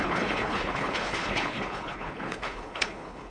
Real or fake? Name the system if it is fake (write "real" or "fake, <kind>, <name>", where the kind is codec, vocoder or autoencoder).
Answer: fake, codec, HILCodec